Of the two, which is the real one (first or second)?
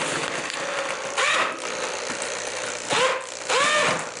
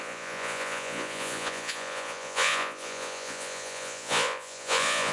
first